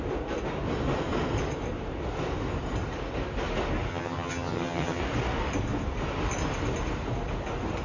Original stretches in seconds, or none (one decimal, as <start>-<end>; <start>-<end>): 0.0-3.9; 5.0-7.8